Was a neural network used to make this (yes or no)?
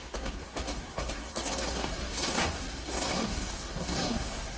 yes